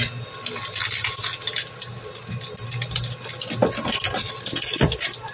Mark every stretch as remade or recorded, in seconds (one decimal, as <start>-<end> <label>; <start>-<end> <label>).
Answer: 0.0-5.3 recorded

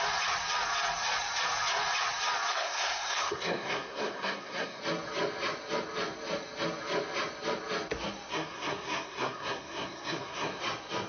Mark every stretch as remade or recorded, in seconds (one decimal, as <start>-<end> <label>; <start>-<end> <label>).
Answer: 0.0-2.5 recorded; 2.5-4.8 remade; 4.8-8.3 recorded; 8.3-10.6 remade; 10.6-11.1 recorded